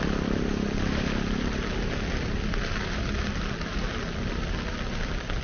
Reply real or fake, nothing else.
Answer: real